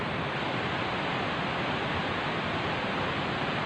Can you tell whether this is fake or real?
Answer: real